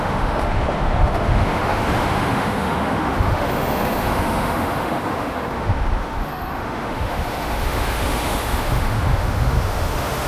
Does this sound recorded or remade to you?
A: remade